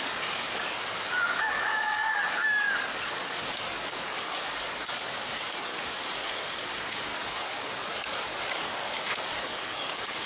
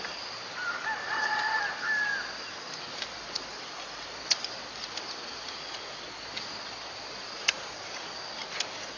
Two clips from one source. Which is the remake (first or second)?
first